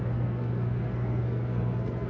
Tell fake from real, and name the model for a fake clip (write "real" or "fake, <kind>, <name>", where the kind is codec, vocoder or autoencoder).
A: fake, codec, SNAC